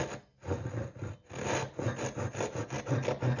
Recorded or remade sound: recorded